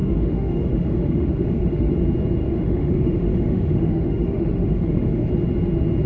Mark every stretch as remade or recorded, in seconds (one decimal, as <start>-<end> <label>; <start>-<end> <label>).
0.0-1.9 remade; 1.9-2.4 recorded; 2.4-5.3 remade; 5.3-6.1 recorded